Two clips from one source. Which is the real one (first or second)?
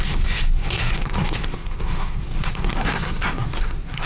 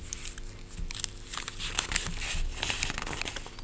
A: second